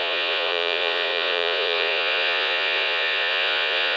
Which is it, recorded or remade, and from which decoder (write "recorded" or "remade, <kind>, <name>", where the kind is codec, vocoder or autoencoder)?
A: remade, vocoder, Vocos